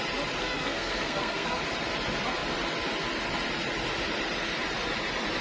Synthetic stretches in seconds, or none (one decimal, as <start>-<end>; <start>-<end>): 0.4-1.6